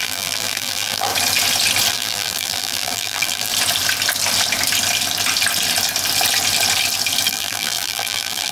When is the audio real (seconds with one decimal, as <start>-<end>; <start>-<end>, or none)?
1.1-1.9; 3.5-7.3